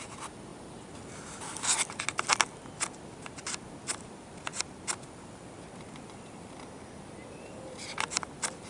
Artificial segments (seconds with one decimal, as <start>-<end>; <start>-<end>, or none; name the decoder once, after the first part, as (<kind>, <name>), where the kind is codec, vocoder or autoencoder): none